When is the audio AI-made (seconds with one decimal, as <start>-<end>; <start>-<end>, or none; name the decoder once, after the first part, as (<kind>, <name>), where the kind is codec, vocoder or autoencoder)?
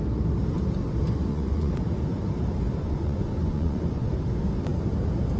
1.3-1.8 (vocoder, Vocos); 2.8-4.1